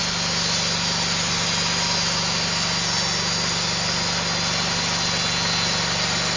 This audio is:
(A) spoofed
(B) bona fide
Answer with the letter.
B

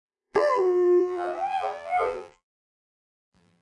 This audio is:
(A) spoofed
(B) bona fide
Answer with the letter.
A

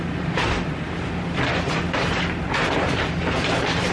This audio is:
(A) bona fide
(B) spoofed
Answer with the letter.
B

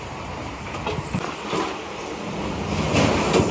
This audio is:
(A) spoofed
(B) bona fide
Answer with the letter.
B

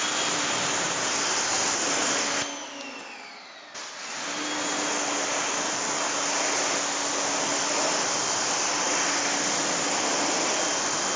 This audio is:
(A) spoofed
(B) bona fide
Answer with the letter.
B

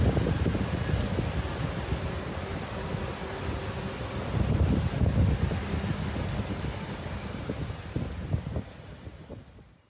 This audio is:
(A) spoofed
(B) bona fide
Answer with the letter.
B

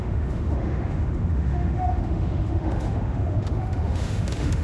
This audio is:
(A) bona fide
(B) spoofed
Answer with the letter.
B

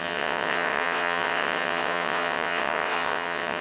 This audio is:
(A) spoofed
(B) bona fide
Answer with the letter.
A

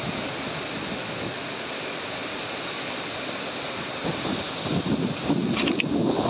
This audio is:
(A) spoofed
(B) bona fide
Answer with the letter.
B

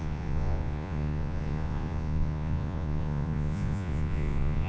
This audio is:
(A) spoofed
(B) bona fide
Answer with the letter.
A